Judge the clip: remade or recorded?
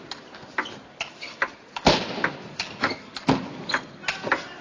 recorded